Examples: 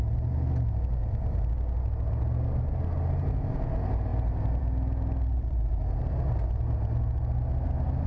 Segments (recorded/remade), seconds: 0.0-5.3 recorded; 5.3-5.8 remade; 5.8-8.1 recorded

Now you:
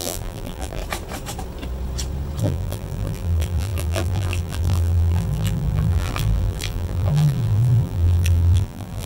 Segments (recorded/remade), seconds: 0.0-0.8 remade; 0.8-2.4 recorded; 2.4-9.1 remade